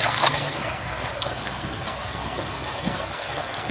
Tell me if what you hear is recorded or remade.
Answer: remade